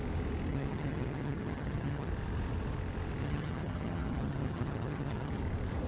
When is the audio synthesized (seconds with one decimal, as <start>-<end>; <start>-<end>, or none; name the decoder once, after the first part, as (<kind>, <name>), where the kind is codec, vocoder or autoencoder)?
0.5-2.1 (vocoder, HiFi-GAN); 3.2-5.4